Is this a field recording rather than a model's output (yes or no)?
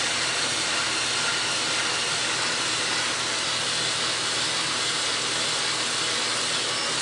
yes